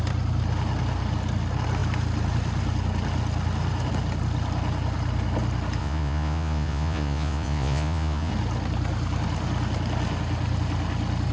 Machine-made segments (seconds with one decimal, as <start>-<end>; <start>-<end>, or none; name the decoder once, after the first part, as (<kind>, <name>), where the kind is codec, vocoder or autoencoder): 5.8-8.3 (vocoder, Vocos)